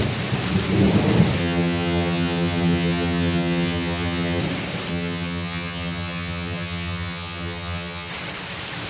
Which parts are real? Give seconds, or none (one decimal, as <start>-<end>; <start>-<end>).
0.0-1.4; 4.4-4.9; 8.1-8.9